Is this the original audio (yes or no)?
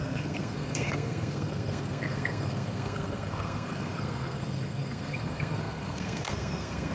no